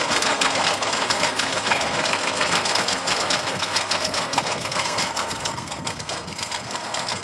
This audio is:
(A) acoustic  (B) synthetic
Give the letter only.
B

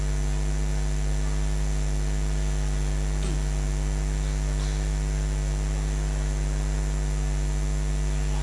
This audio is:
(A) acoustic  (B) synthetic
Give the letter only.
A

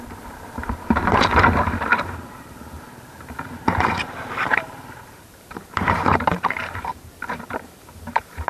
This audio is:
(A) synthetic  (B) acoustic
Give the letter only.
A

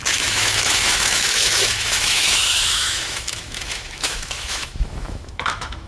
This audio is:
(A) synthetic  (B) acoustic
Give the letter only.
A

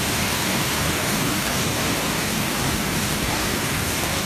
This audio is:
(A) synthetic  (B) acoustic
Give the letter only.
A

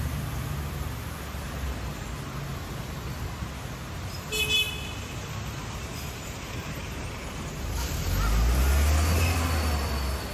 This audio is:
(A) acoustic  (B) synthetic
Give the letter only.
A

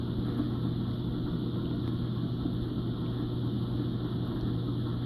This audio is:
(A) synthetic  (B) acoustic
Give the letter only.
B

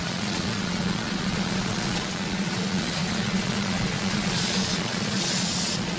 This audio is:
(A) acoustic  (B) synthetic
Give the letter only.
B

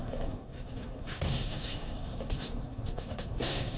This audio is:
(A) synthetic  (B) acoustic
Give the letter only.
A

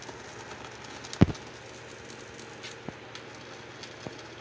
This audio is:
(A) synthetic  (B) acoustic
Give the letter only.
B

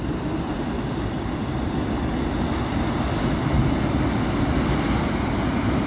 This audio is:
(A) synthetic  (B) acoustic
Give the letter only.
B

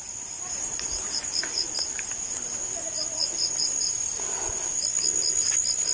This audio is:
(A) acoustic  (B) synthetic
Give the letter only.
A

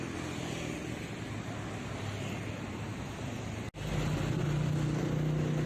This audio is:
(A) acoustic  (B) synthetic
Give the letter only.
A